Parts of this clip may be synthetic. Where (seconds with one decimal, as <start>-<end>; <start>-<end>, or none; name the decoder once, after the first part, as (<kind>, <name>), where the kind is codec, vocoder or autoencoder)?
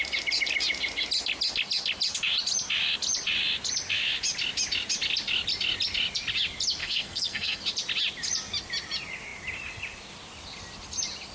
6.8-7.6 (codec, SNAC)